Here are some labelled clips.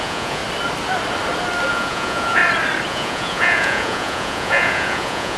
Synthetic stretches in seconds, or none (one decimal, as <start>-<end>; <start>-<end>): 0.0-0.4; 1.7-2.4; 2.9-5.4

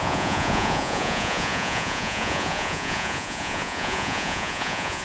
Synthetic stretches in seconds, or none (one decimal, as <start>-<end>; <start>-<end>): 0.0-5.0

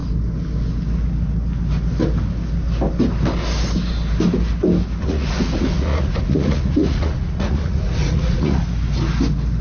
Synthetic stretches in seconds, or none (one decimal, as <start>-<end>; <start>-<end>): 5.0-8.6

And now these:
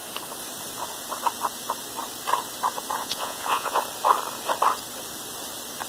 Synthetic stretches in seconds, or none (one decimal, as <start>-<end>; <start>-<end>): 3.0-3.8

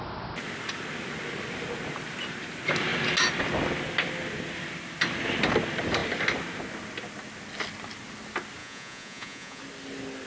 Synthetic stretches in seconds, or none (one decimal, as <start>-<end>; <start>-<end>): 8.6-9.6